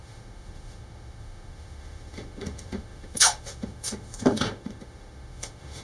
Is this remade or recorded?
remade